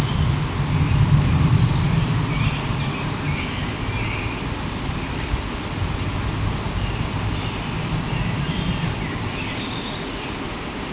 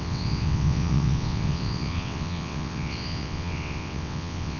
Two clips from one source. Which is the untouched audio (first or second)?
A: first